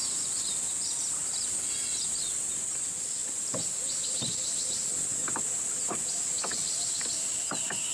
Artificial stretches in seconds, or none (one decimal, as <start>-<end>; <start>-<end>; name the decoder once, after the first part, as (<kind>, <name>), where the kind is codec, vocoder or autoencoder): 1.2-2.7 (vocoder, BigVGAN v2); 5.2-7.2